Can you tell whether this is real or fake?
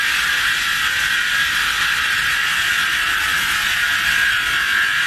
real